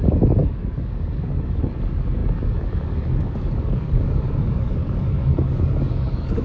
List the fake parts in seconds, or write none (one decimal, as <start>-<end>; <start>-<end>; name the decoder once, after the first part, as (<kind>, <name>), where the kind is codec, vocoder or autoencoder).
0.0-6.4 (codec, DAC)